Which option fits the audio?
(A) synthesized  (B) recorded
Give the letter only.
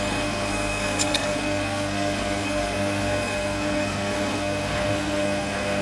A